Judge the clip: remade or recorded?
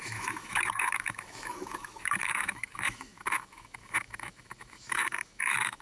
remade